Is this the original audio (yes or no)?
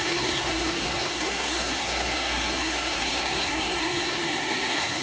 no